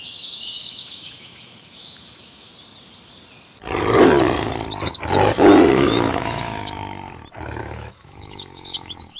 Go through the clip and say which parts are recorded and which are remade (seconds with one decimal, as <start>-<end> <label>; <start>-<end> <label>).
0.0-2.5 remade; 2.5-5.7 recorded; 5.7-6.8 remade; 6.8-7.6 recorded; 7.6-9.2 remade